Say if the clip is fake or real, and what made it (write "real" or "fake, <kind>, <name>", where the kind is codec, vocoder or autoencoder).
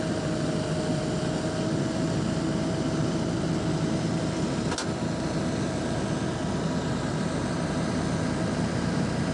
real